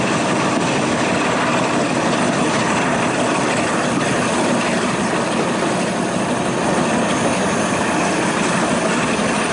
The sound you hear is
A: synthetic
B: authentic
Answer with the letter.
B